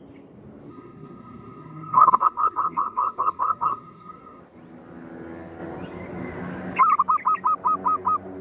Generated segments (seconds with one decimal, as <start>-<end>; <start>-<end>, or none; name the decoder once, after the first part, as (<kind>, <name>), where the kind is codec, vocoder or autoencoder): 0.7-4.4 (codec, SNAC)